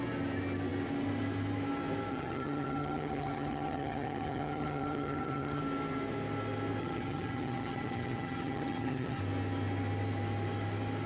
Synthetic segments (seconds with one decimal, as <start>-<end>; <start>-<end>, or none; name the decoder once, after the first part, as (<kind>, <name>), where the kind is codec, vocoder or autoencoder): 2.1-5.6 (vocoder, HiFi-GAN); 6.8-9.2